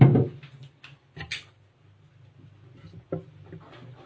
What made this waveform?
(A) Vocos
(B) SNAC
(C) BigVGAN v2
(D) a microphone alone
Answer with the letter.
D